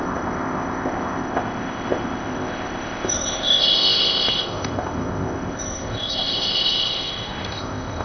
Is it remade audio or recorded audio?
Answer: remade